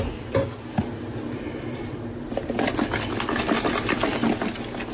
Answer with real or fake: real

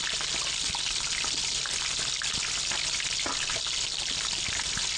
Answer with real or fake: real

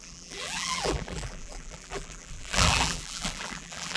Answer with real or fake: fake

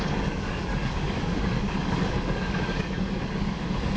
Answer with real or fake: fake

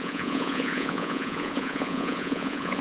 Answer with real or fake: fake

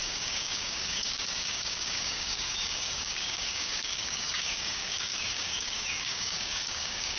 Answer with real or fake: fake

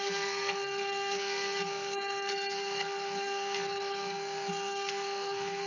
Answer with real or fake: fake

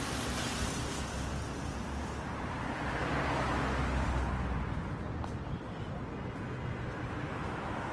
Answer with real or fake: real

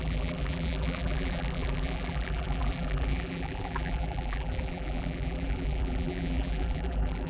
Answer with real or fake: fake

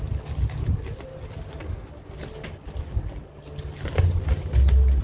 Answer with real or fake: real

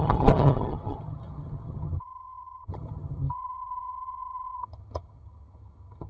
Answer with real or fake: fake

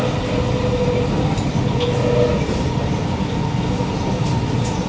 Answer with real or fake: real